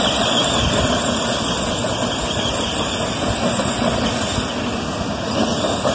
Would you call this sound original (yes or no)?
yes